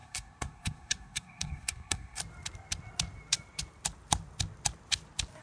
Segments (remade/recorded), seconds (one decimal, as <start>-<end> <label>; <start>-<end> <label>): 0.0-2.2 remade; 2.2-5.4 recorded